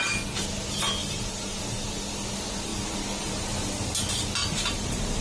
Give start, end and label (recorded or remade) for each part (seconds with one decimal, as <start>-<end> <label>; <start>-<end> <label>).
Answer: 0.0-1.0 recorded; 1.0-1.9 remade; 1.9-4.4 recorded; 4.4-5.2 remade